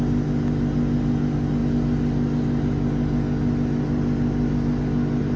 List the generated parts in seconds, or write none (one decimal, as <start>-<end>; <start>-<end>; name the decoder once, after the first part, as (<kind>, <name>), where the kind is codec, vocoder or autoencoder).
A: none